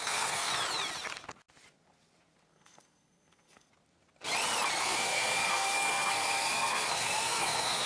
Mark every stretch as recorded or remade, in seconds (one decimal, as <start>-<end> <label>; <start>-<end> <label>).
0.0-0.5 remade; 0.5-2.5 recorded; 2.5-3.7 remade; 3.7-4.8 recorded; 4.8-7.9 remade